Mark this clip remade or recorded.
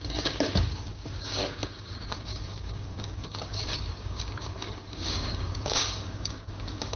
remade